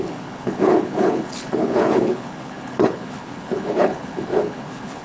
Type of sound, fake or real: fake